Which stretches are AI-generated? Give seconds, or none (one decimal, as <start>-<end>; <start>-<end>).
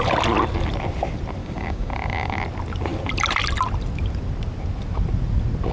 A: 1.4-2.4